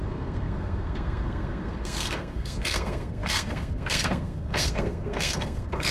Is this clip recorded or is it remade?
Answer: remade